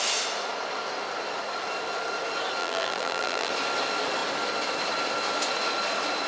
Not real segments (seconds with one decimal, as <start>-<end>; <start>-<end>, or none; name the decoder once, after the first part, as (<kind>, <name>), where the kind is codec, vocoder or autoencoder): 2.6-3.5 (vocoder, BigVGAN v2)